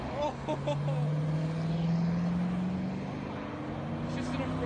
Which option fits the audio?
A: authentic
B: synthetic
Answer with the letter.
A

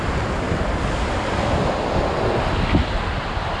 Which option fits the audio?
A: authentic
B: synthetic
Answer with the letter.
A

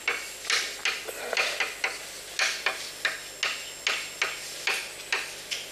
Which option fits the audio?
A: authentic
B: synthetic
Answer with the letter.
A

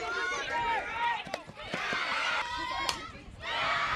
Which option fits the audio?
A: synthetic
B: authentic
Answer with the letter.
A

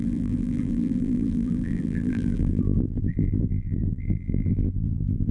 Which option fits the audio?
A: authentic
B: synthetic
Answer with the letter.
B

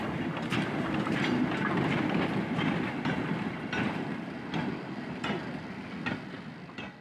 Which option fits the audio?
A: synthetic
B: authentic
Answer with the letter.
B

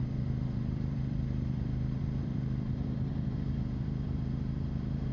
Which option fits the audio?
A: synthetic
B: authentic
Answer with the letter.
A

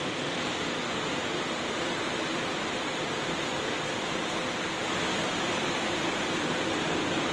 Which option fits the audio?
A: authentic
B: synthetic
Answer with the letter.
A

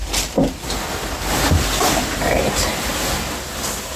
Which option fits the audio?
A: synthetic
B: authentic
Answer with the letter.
B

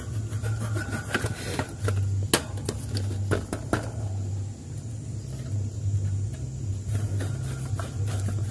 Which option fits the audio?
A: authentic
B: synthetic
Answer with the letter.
A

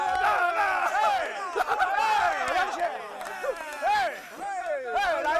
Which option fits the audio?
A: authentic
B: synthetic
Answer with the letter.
A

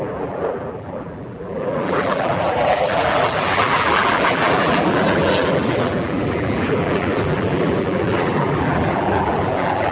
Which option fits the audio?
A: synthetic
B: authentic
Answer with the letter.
A